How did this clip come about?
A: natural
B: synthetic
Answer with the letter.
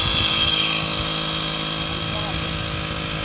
A